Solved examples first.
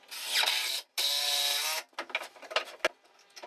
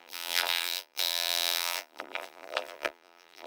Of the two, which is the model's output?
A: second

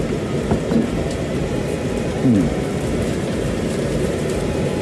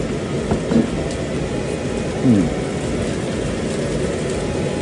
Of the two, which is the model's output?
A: first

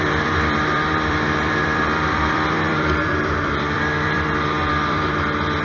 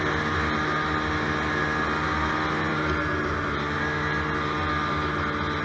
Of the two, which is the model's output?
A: first